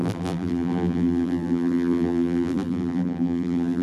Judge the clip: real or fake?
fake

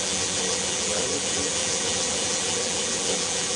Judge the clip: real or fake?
fake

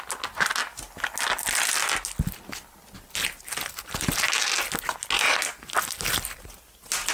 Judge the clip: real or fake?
real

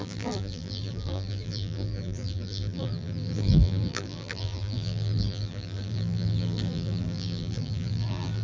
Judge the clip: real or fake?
fake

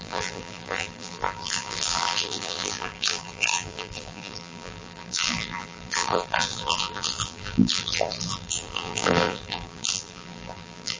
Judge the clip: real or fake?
fake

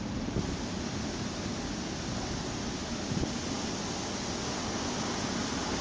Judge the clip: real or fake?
real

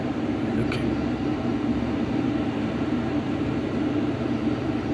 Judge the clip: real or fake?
fake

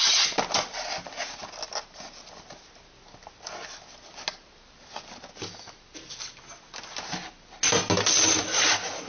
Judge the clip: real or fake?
real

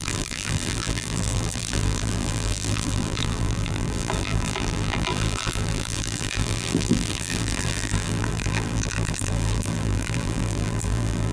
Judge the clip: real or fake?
fake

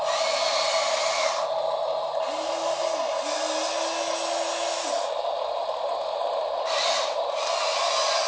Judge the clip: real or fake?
real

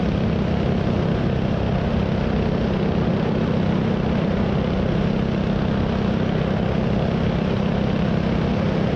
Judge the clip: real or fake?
real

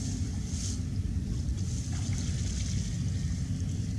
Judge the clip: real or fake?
real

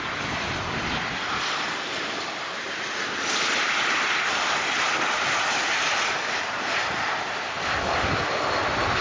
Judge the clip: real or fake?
fake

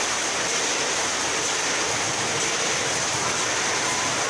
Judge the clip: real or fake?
real